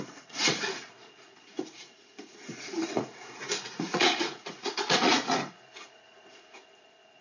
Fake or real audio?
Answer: fake